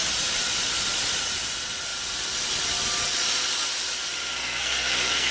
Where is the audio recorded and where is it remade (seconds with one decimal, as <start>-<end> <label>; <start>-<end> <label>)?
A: 0.0-4.4 recorded; 4.4-5.3 remade

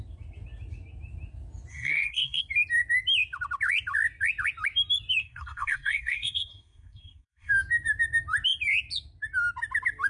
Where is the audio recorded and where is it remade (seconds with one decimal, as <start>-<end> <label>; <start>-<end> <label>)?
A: 0.0-1.7 recorded; 1.7-2.4 remade; 2.4-5.2 recorded; 5.2-7.5 remade; 7.5-10.1 recorded

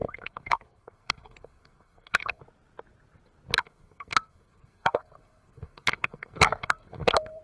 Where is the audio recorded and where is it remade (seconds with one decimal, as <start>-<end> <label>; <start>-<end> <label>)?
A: 0.0-2.4 remade; 2.4-3.6 recorded; 3.6-7.4 remade

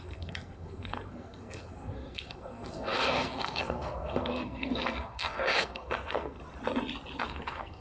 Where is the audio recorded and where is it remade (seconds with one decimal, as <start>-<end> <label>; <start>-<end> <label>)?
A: 0.0-6.4 remade; 6.4-7.2 recorded; 7.2-7.8 remade

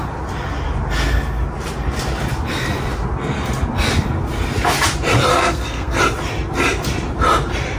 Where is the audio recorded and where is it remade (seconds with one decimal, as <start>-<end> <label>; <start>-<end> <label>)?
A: 0.0-5.3 recorded; 5.3-6.0 remade; 6.0-7.8 recorded

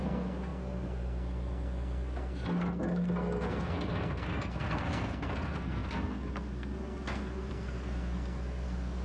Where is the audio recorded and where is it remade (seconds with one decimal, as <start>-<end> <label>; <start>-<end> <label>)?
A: 0.0-9.0 remade

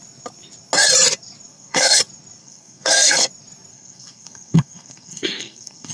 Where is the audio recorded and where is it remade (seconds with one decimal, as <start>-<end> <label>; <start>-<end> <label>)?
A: 0.0-1.5 recorded; 1.5-2.0 remade; 2.0-2.4 recorded; 2.4-3.3 remade; 3.3-3.7 recorded; 3.7-5.9 remade